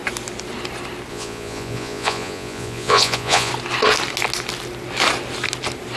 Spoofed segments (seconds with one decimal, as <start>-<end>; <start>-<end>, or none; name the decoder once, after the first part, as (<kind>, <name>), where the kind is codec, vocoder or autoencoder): 1.1-3.5 (vocoder, Vocos)